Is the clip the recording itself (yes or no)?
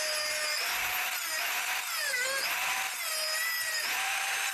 yes